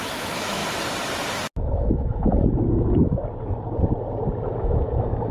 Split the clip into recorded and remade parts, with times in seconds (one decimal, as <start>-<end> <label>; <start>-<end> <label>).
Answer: 0.0-0.6 remade; 0.6-1.6 recorded; 1.6-3.2 remade; 3.2-4.6 recorded; 4.6-5.3 remade